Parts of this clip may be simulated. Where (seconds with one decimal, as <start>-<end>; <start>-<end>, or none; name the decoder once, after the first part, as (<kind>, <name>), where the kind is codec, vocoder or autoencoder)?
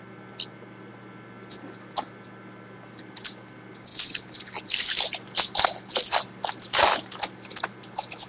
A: none